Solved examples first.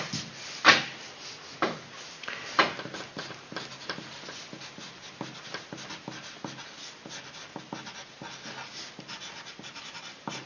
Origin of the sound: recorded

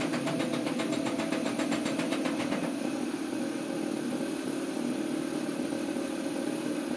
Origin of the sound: recorded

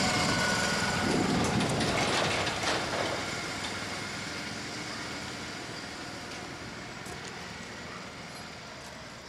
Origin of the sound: recorded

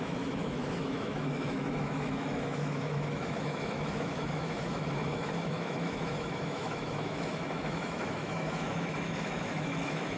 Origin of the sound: remade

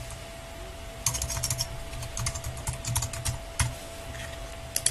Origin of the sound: recorded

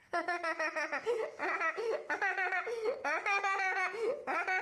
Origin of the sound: remade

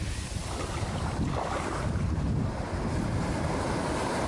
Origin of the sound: recorded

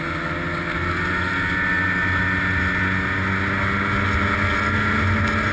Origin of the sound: recorded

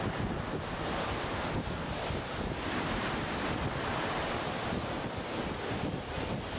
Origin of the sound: recorded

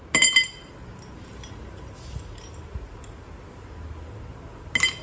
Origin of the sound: recorded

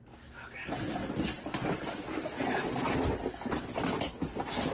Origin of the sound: recorded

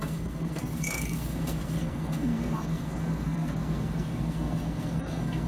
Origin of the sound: remade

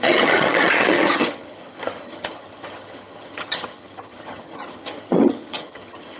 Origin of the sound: remade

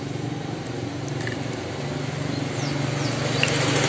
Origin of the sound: recorded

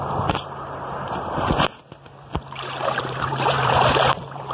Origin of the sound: remade